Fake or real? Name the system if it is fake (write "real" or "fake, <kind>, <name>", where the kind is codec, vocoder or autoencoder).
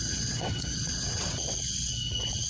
fake, vocoder, WaveNeXt